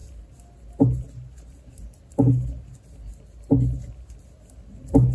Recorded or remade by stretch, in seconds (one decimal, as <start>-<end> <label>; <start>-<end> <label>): 0.0-5.1 recorded